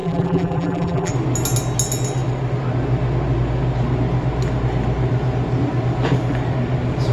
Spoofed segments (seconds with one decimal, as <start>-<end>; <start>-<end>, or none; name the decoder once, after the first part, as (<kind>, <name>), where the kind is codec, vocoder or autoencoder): 0.0-1.1 (vocoder, BigVGAN v2)